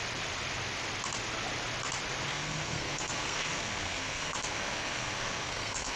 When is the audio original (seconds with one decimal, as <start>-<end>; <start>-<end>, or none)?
0.0-2.3